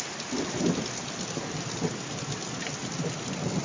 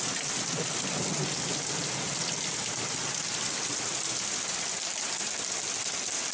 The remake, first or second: second